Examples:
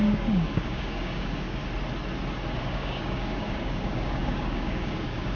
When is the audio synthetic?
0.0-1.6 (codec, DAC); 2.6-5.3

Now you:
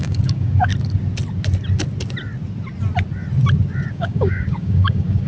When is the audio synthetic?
0.0-0.7 (codec, DAC); 3.9-5.3